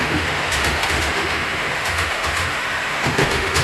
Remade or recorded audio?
remade